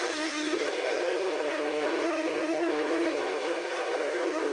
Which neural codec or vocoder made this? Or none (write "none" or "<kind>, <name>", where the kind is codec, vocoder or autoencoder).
codec, SNAC